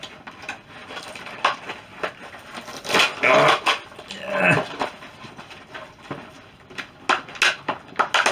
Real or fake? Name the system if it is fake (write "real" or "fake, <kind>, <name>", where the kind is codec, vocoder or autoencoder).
real